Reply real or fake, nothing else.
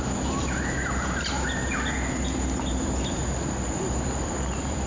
real